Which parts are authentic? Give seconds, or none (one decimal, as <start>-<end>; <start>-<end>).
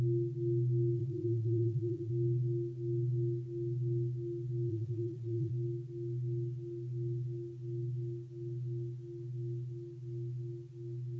0.0-1.0; 2.1-4.7; 5.5-11.2